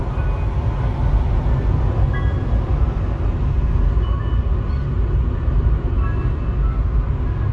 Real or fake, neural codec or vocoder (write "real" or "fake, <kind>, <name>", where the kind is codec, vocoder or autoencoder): real